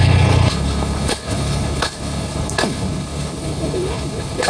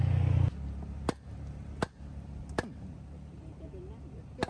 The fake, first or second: first